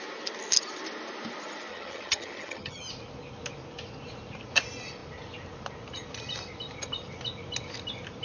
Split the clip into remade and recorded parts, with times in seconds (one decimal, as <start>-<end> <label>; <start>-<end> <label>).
0.0-1.7 recorded; 1.7-2.9 remade; 2.9-8.2 recorded